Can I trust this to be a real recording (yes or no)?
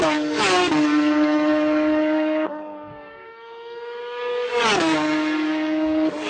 no